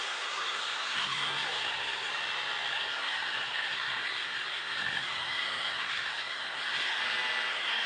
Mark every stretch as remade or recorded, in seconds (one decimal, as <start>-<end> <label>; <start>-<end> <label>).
0.0-2.1 remade; 2.1-2.7 recorded; 2.7-7.0 remade; 7.0-7.5 recorded; 7.5-7.9 remade